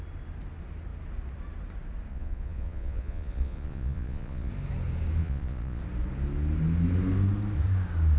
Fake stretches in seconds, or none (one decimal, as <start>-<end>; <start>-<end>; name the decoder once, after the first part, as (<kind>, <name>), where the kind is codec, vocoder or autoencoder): 2.1-4.5 (vocoder, Vocos); 5.2-5.8